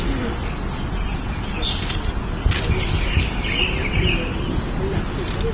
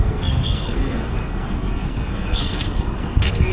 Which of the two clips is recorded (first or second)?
first